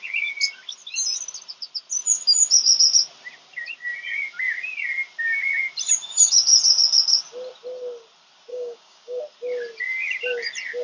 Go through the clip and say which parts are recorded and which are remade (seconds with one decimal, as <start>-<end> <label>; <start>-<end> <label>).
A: 0.0-8.5 recorded; 8.5-9.2 remade; 9.2-10.8 recorded